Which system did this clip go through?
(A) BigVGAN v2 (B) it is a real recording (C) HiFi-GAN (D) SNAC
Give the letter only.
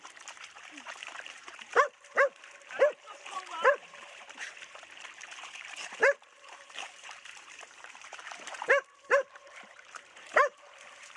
A